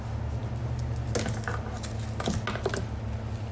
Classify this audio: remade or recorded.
recorded